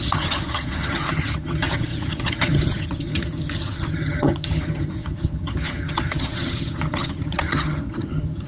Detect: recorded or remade remade